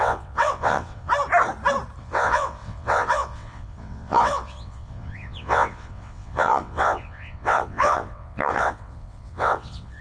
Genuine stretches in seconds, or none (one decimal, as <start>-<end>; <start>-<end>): 1.1-2.0